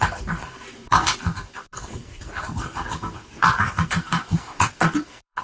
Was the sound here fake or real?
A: fake